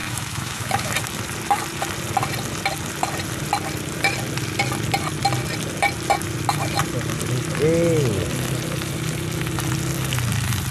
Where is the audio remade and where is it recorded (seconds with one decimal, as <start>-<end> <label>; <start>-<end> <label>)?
0.0-0.9 remade; 0.9-10.7 recorded